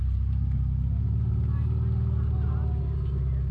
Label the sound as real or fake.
real